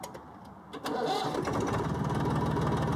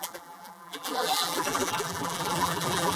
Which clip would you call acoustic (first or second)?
first